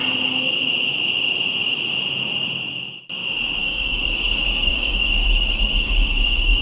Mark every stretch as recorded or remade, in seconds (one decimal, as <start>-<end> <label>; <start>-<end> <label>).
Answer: 0.0-3.6 recorded; 3.6-6.6 remade